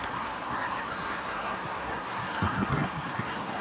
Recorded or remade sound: remade